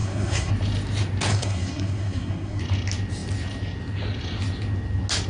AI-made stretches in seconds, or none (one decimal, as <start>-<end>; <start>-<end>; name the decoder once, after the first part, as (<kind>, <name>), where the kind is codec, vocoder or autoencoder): 0.0-0.5 (codec, SNAC); 1.3-2.6